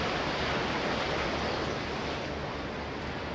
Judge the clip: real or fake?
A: real